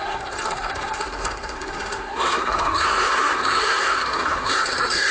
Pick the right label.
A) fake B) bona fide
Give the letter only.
A